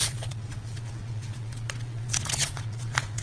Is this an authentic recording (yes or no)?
no